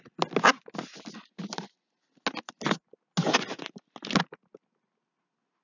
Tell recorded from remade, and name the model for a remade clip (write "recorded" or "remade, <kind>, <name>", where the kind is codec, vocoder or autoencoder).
recorded